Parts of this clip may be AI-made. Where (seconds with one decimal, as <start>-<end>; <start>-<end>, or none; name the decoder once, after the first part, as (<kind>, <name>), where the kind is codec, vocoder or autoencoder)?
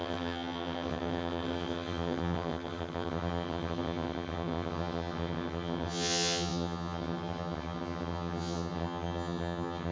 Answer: 0.0-9.9 (vocoder, HiFi-GAN)